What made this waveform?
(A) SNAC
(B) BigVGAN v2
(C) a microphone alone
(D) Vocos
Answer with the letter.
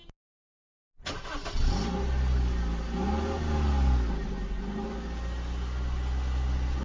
C